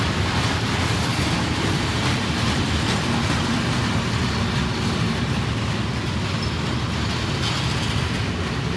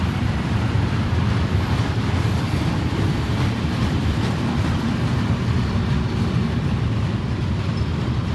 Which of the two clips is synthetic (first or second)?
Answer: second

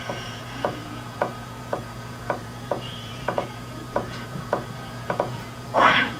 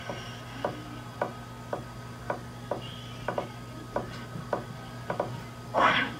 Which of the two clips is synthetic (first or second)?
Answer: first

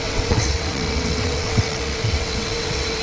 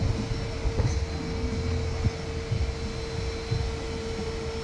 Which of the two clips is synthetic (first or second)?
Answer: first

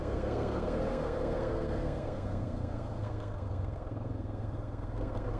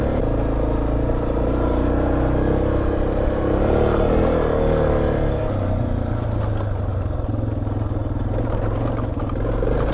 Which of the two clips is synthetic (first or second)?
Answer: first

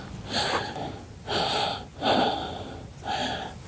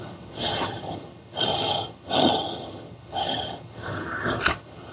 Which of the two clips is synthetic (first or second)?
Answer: second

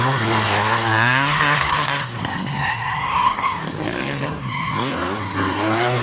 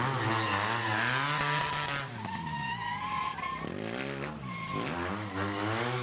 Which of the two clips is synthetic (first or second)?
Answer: first